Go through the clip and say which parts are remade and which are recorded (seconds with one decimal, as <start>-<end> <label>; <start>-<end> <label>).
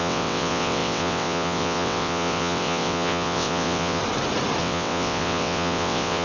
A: 0.0-4.0 remade; 4.0-4.6 recorded; 4.6-6.2 remade